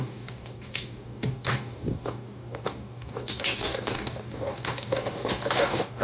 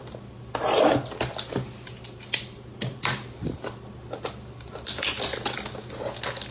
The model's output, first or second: first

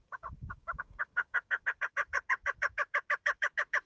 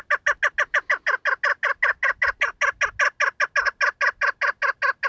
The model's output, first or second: first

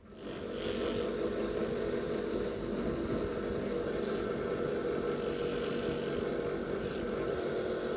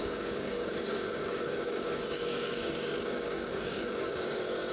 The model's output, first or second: second